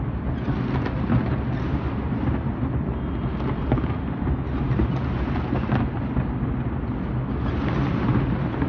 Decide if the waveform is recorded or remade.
recorded